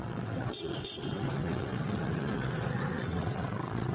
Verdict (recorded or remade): remade